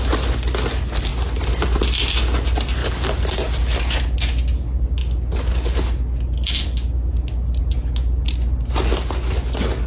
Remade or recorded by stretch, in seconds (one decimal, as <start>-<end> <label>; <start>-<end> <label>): 0.0-9.9 recorded